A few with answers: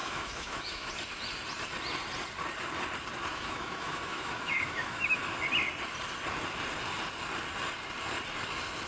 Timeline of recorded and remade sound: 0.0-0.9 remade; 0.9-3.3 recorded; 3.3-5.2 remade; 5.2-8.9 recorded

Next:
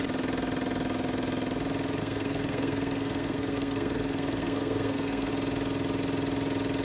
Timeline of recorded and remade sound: 0.0-2.0 recorded; 2.0-5.3 remade; 5.3-6.8 recorded

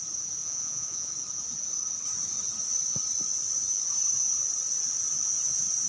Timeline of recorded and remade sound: 0.0-0.4 recorded; 0.4-1.1 remade; 1.1-5.9 recorded

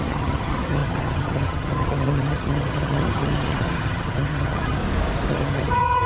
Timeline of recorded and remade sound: 0.0-4.8 remade; 4.8-5.3 recorded; 5.3-6.1 remade

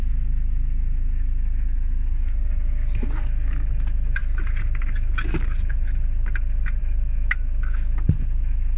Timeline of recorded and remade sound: 0.0-8.8 recorded